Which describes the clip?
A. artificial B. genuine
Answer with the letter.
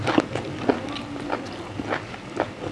B